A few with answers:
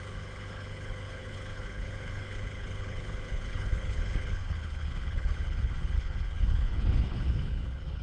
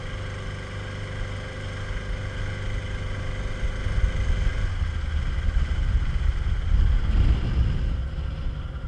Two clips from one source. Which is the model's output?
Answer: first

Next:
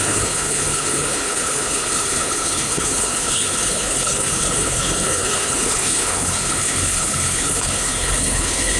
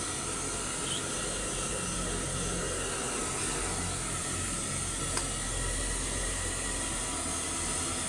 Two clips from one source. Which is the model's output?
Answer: first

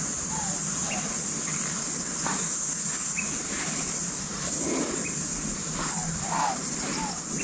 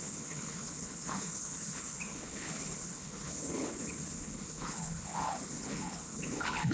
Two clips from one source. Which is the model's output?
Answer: second